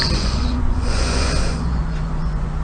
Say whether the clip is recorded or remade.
remade